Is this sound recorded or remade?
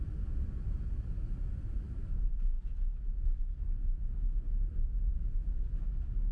recorded